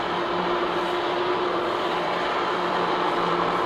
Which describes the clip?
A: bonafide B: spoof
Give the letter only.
B